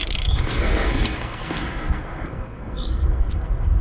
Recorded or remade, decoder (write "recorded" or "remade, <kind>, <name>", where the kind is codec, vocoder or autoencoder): remade, codec, SNAC